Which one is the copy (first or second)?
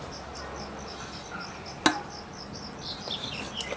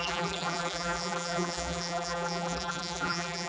second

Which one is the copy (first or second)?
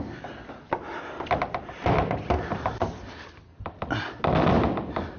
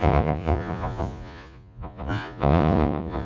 second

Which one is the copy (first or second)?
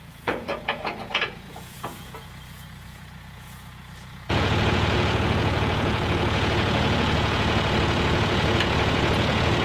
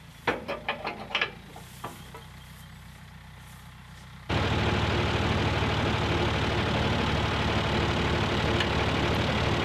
first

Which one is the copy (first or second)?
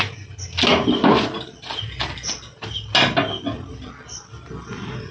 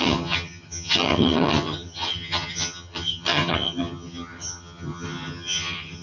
second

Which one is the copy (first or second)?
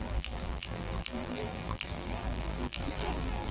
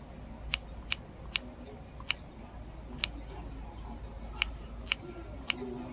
first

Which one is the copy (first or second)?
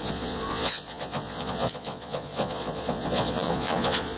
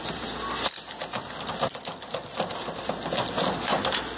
first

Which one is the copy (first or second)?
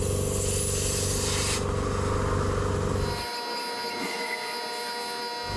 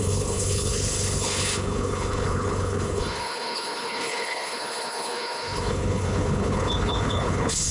second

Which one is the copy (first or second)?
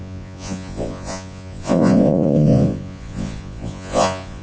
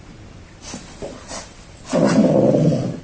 first